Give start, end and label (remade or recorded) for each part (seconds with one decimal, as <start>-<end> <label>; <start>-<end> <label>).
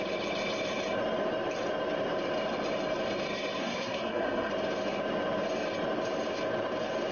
0.0-3.6 recorded; 3.6-4.5 remade; 4.5-7.1 recorded